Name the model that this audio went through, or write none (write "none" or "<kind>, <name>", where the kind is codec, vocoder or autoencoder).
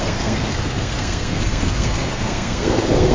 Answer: codec, SNAC